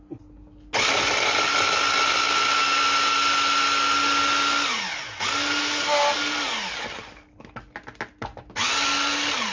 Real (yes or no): yes